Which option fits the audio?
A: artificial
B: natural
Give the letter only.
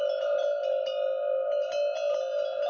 B